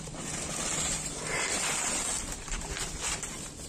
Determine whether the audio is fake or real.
real